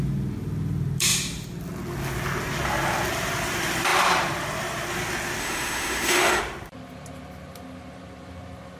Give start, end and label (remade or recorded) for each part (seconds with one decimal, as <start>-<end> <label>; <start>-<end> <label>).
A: 0.0-5.4 recorded; 5.4-6.4 remade; 6.4-8.8 recorded